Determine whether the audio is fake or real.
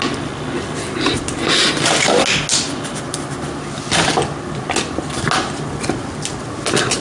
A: real